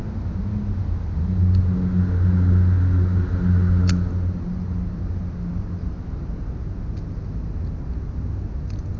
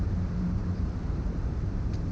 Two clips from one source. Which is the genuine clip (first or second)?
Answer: first